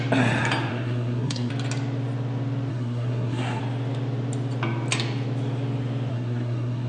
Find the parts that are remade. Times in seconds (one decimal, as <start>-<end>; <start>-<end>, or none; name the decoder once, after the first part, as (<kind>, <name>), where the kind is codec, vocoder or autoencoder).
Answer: 0.7-1.5 (codec, SNAC); 2.7-3.6; 6.1-6.9